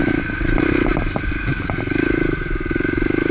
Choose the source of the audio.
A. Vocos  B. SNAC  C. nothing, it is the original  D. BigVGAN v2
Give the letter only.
C